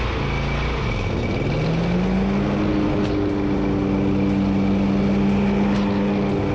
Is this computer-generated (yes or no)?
no